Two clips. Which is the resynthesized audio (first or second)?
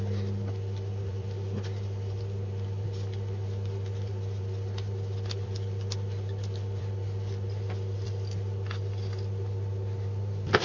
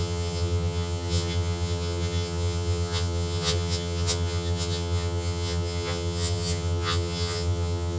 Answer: second